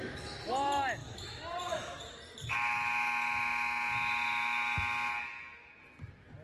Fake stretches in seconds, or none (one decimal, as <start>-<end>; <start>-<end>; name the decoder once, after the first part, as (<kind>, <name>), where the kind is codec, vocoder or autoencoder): 1.0-2.0 (autoencoder, DAC-VAE)